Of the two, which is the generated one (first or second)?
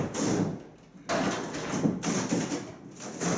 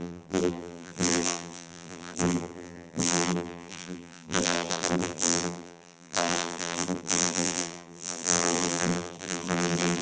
second